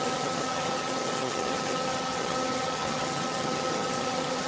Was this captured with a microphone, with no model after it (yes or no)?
no